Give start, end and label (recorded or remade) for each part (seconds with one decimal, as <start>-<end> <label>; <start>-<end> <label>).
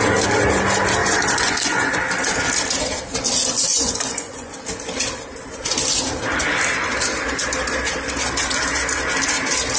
0.0-1.0 recorded; 1.0-1.9 remade; 1.9-3.7 recorded; 3.7-4.5 remade; 4.5-9.8 recorded